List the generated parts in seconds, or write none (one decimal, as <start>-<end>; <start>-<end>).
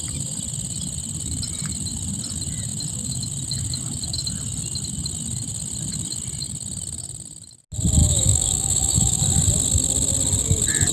8.0-9.2